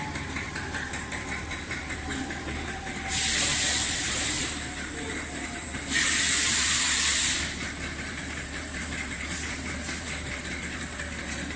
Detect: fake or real fake